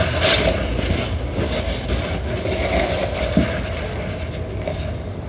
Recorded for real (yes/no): yes